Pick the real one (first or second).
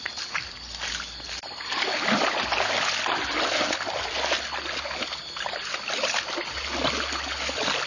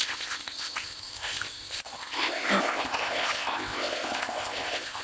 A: first